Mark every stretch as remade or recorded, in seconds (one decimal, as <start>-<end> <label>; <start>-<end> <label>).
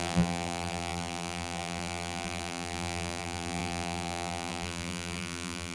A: 0.0-5.7 remade